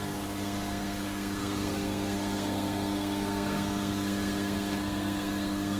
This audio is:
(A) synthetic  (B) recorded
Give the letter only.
A